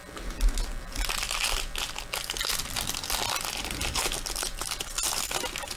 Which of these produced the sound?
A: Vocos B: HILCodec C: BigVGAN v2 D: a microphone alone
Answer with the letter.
D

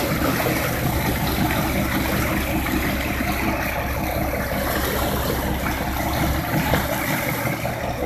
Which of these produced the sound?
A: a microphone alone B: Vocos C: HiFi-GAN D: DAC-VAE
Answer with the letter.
A